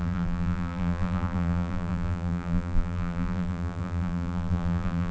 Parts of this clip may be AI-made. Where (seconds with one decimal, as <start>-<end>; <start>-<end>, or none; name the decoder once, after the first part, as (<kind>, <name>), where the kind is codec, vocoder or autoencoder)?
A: 0.0-5.1 (vocoder, BigVGAN v2)